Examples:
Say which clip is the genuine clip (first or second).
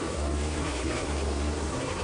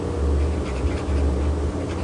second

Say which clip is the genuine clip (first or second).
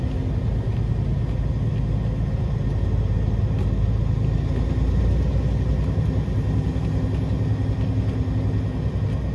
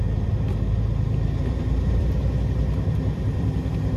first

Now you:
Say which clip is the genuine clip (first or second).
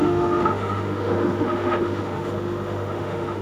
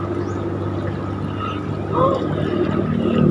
second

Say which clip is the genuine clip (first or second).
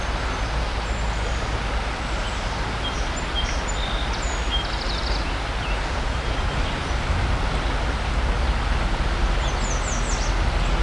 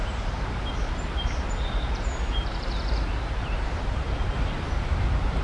first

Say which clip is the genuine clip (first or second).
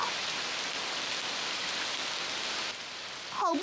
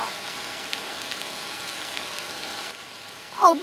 first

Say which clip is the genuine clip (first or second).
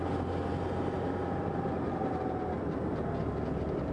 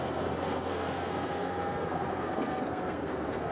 first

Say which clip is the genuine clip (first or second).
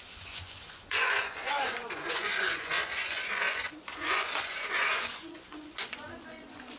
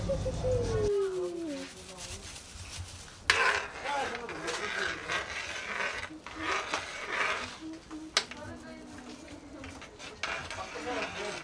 second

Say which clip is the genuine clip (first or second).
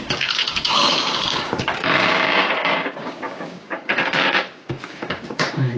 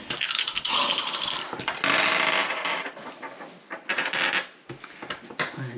second